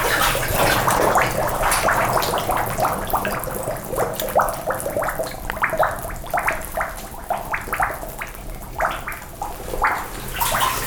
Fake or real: fake